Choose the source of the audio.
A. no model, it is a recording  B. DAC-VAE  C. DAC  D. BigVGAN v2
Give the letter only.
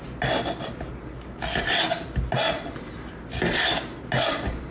A